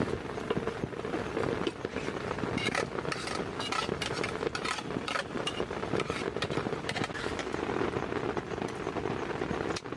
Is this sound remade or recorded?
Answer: recorded